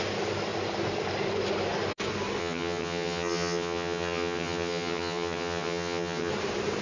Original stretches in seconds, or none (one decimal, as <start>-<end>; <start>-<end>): 0.0-2.4; 6.3-6.8

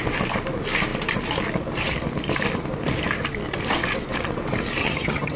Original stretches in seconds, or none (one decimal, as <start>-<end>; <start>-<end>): 0.0-4.8

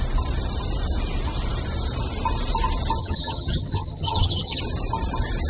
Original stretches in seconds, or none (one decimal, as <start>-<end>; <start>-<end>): 0.0-3.0; 4.6-5.5

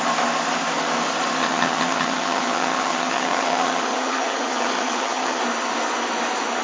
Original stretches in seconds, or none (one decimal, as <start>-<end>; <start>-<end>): 0.0-1.4; 5.4-6.6

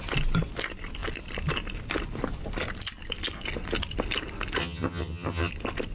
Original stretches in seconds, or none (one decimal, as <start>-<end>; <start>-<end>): 0.0-4.6; 5.5-5.9